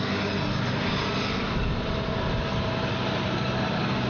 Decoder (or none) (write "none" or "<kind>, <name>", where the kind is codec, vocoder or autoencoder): none